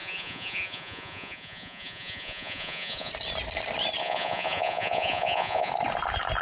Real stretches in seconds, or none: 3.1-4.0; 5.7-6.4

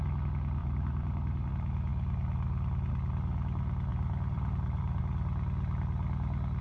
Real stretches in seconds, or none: 0.0-0.6; 1.5-3.9; 5.0-6.6

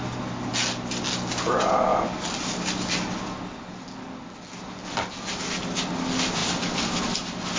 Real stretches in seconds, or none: 0.0-7.6